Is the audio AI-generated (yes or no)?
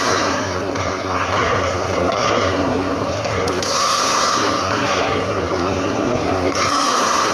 yes